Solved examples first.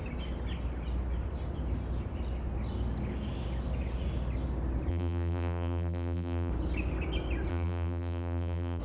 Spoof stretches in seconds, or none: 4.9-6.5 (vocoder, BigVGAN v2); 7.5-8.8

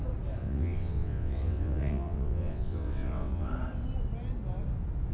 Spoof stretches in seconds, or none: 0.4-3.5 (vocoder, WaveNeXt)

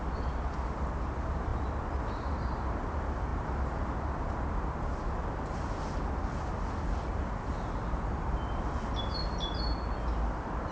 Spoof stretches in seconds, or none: none

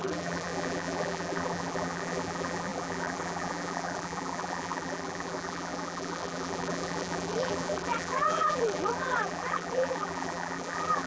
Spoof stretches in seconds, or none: 0.0-11.1 (vocoder, BigVGAN v2)